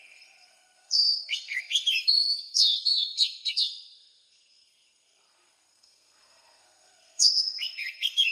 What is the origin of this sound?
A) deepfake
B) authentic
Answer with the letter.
A